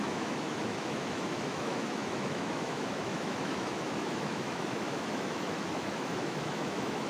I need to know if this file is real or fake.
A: fake